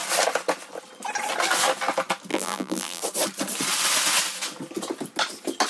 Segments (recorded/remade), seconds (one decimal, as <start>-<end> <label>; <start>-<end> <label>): 0.0-2.3 recorded; 2.3-3.0 remade; 3.0-5.7 recorded